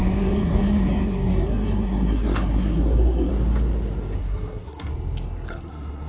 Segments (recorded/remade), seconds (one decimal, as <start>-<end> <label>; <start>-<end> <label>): 0.0-3.3 remade; 3.3-4.2 recorded; 4.2-4.9 remade; 4.9-5.5 recorded; 5.5-6.1 remade